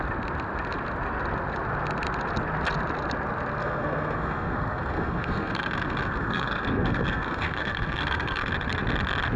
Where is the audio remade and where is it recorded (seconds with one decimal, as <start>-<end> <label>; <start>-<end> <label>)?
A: 0.0-3.6 recorded; 3.6-8.5 remade; 8.5-9.4 recorded